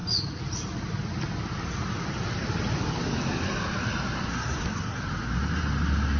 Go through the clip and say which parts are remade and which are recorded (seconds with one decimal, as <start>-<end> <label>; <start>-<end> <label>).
0.0-4.3 recorded; 4.3-5.0 remade; 5.0-6.2 recorded